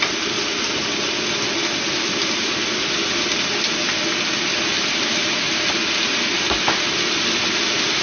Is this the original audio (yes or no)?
yes